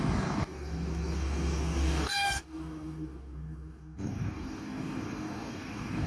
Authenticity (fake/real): fake